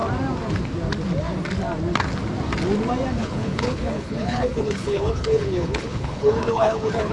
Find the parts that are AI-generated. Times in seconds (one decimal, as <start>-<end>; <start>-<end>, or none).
3.1-7.1